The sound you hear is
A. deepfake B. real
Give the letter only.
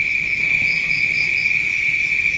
B